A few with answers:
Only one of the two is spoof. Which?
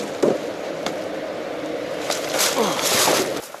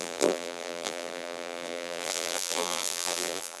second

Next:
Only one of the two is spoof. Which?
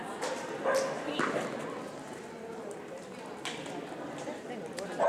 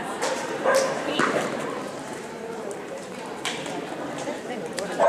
second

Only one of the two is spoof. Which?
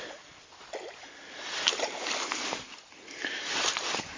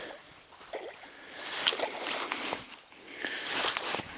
second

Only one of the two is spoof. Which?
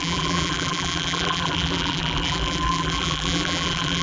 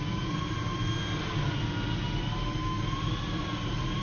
first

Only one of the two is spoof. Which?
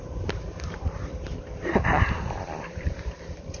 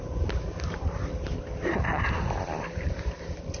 first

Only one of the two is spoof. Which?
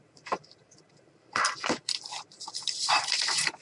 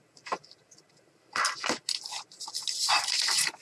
first